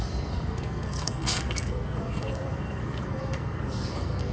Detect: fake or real fake